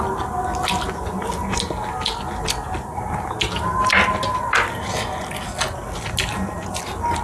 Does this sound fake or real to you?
real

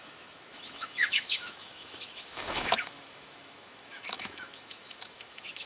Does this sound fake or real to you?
fake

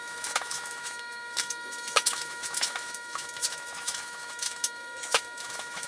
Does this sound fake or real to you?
fake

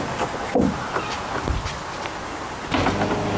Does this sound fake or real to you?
real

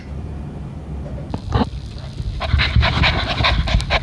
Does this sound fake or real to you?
real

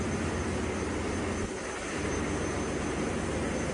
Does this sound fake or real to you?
real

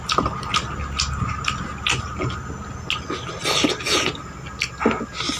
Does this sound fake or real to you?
real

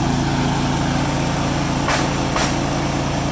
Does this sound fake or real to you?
real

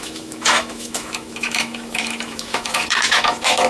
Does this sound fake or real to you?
fake